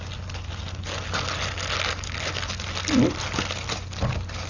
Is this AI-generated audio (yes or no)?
no